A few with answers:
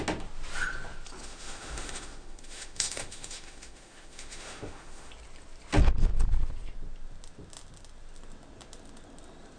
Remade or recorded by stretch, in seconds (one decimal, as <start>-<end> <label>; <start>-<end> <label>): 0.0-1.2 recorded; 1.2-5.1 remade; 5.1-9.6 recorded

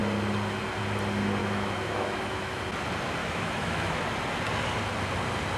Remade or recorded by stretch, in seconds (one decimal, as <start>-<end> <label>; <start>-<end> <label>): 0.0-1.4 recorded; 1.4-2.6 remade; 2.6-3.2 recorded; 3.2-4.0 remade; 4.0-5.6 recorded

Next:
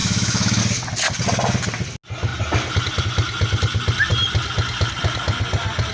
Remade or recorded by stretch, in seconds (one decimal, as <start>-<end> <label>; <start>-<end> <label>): 0.0-0.6 remade; 0.6-5.9 recorded